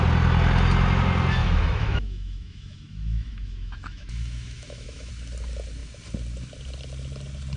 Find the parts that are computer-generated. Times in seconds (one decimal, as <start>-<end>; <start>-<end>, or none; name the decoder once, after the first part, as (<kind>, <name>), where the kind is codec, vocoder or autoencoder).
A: 1.4-5.1 (autoencoder, DAC-VAE)